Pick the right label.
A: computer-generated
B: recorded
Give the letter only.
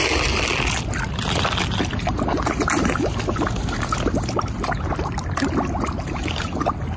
B